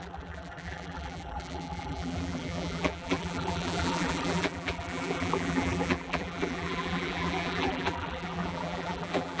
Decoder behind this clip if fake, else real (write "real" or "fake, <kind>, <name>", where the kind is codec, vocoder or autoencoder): fake, vocoder, BigVGAN v2